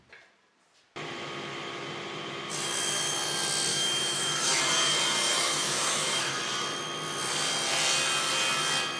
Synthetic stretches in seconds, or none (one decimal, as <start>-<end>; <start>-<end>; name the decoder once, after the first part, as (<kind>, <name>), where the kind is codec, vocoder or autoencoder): 3.7-4.6 (autoencoder, DAC-VAE); 5.3-6.4